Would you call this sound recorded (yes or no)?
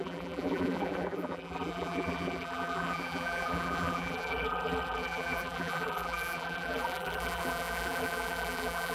no